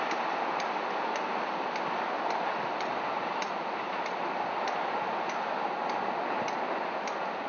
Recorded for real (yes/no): yes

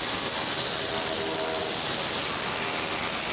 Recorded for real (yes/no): yes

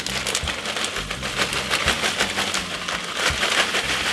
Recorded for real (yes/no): yes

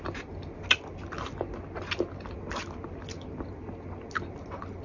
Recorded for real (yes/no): yes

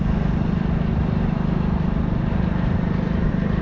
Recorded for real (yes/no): yes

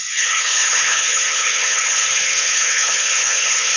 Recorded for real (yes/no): no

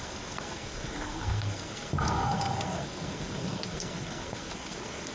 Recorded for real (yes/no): no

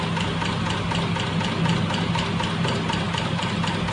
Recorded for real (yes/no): yes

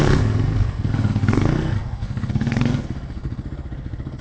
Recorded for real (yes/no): no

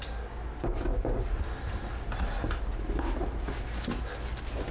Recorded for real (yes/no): yes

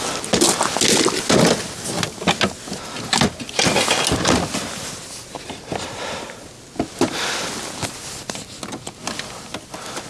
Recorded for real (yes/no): yes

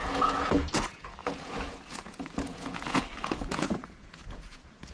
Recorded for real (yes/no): no